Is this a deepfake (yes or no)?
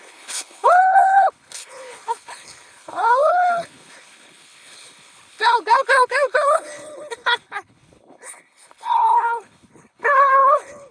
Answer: yes